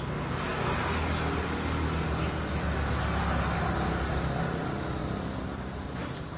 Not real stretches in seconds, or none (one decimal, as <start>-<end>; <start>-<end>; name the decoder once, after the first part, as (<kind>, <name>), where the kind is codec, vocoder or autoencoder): none